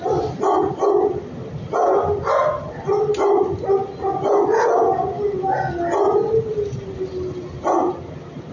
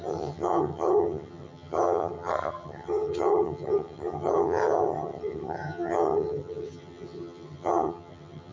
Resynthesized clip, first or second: second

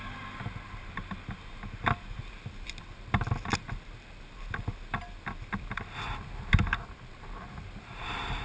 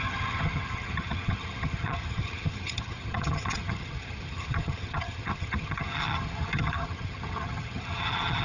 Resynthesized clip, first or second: second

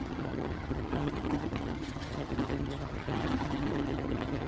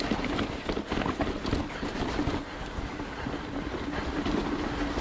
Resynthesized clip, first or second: first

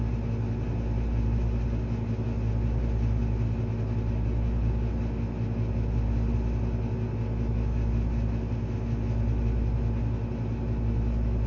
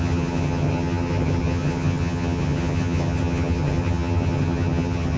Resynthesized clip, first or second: second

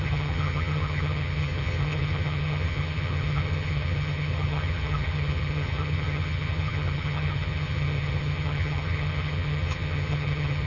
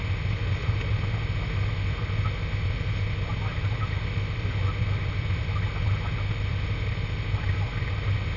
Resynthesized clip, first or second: first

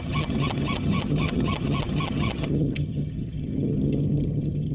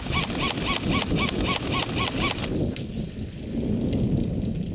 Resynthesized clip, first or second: first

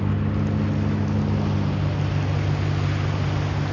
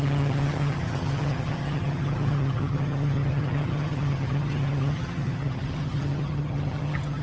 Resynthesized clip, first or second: second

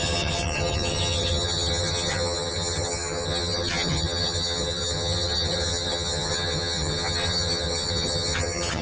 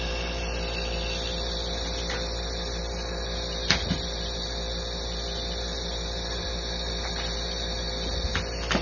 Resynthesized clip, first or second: first